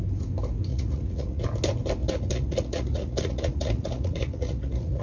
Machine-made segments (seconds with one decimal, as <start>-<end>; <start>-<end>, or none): 0.7-1.4; 2.0-5.0